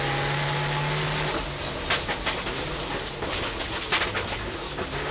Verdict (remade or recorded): recorded